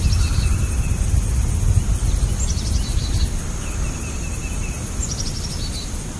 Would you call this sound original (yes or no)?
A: yes